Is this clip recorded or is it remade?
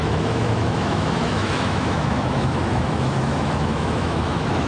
remade